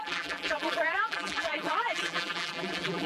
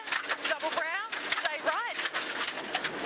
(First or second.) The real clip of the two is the second